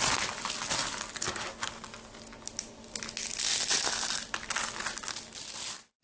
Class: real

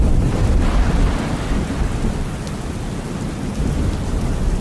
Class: real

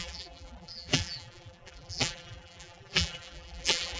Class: fake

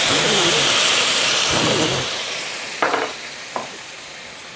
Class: fake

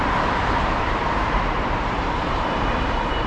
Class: fake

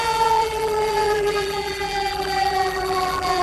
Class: fake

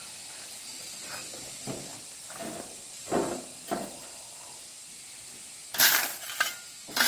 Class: real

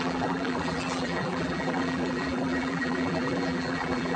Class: fake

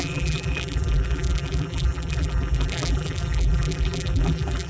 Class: fake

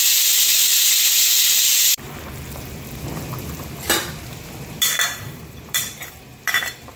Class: fake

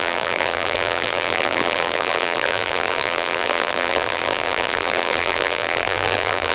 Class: fake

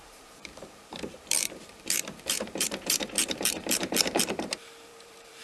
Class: fake